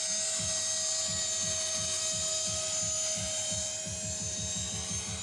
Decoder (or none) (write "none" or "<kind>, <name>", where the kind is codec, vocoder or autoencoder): none